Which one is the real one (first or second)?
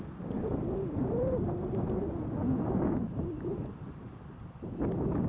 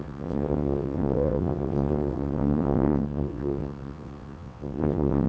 first